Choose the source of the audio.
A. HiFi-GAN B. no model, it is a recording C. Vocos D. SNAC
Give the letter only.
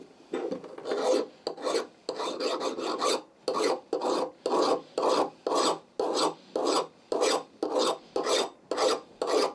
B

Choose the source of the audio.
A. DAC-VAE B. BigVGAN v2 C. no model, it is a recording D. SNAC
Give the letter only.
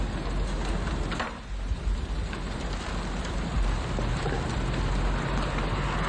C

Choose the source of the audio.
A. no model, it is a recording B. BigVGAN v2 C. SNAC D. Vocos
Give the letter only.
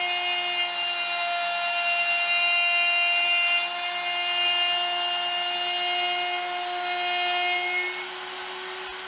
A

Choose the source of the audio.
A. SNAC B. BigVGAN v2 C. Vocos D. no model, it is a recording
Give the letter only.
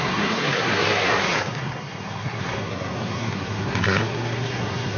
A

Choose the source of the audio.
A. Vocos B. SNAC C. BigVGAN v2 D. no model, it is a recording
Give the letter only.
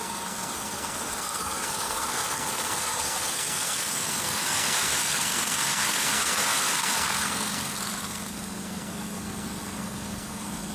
B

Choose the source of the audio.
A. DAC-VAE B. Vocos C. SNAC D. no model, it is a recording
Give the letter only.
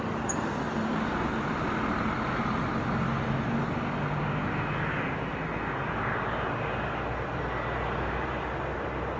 D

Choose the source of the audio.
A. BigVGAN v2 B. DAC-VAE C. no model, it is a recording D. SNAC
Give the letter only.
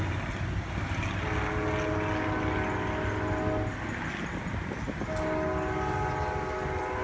C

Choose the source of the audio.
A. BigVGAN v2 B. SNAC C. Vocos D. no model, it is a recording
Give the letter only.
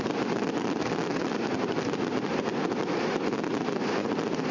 D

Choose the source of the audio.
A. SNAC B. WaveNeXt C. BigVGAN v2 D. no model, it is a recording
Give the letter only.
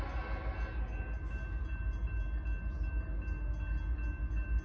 D